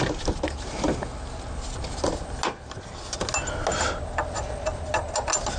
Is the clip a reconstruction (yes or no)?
no